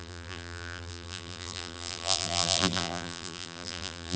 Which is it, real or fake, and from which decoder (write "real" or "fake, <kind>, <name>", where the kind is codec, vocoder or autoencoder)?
fake, vocoder, BigVGAN v2